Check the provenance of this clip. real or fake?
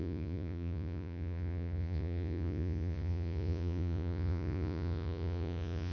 fake